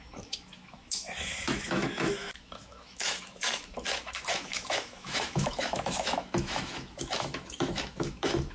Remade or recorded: remade